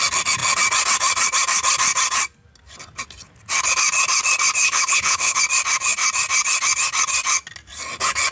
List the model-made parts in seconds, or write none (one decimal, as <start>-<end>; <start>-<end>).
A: 4.6-5.4